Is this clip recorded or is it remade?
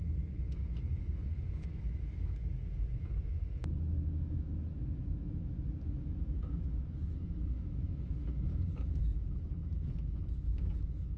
remade